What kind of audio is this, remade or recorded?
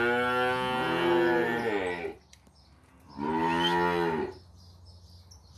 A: recorded